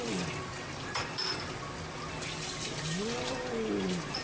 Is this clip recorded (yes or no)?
yes